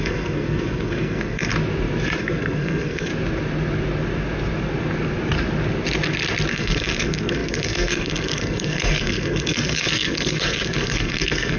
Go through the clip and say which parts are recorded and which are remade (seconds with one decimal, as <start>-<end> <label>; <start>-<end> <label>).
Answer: 0.0-1.5 remade; 1.5-2.2 recorded; 2.2-3.1 remade; 3.1-6.5 recorded; 6.5-11.6 remade